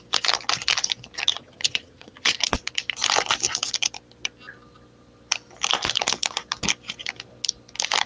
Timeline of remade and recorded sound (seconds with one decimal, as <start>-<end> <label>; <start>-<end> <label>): 0.0-1.3 recorded; 1.3-2.6 remade; 2.6-8.1 recorded